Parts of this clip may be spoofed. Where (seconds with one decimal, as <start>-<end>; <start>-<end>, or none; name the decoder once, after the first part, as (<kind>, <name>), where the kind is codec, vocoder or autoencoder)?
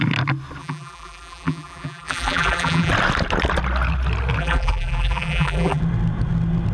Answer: 0.6-2.9 (vocoder, BigVGAN v2); 4.4-5.8